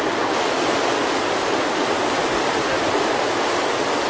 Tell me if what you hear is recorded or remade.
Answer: recorded